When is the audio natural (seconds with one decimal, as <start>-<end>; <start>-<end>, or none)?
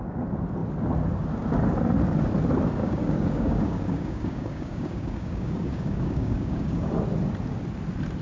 0.0-2.8; 6.9-8.2